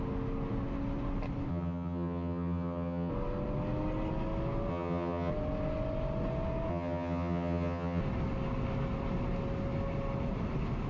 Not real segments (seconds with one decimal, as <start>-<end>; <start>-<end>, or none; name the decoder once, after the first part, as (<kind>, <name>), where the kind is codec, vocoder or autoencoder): 1.5-3.1 (vocoder, HiFi-GAN); 4.7-5.3; 6.7-8.0